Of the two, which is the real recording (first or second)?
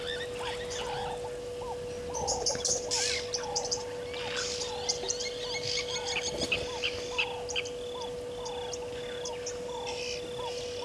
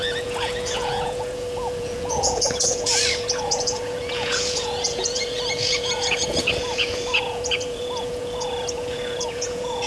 first